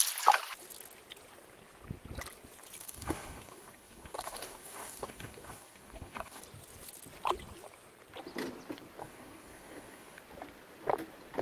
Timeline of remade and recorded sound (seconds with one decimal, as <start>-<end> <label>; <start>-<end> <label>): 0.0-2.8 recorded; 2.8-6.4 remade; 6.4-9.0 recorded; 9.0-10.2 remade; 10.2-11.4 recorded